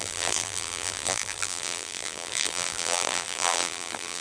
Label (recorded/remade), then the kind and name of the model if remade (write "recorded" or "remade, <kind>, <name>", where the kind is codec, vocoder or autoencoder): remade, vocoder, BigVGAN v2